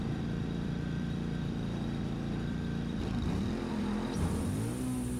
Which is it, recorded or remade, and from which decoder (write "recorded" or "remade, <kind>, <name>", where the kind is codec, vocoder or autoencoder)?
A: remade, vocoder, BigVGAN v2